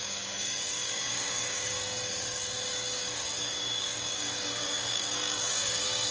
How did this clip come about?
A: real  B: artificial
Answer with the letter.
B